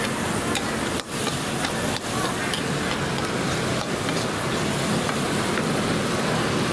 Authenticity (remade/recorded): recorded